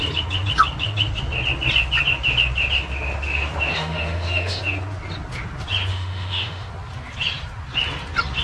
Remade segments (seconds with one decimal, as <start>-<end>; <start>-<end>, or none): 3.7-4.6; 5.9-6.7